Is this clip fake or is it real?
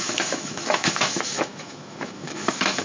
fake